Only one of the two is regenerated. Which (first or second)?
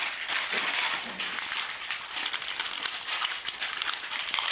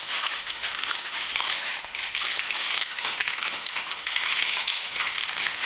second